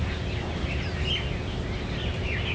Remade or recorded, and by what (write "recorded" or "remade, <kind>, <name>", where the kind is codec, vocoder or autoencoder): recorded